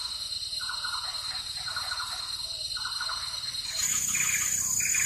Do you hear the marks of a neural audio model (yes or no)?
no